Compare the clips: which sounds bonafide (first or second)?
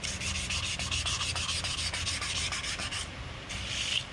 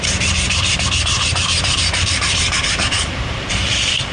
first